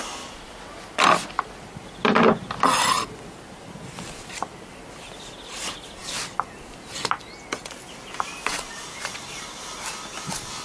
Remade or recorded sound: recorded